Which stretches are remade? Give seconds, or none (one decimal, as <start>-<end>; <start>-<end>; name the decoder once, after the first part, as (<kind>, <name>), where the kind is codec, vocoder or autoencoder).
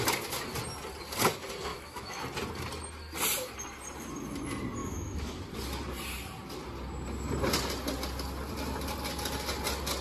1.7-2.2 (autoencoder, DAC-VAE); 4.8-5.4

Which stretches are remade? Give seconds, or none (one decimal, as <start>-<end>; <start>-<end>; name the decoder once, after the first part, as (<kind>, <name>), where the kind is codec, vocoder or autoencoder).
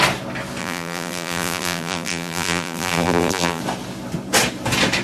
0.6-3.6 (vocoder, BigVGAN v2)